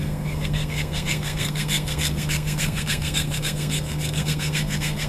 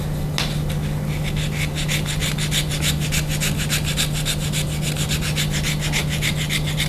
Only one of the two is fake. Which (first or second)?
first